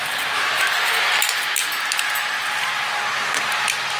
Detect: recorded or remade recorded